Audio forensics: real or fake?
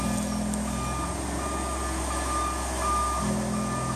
real